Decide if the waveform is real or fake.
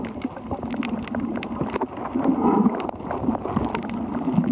real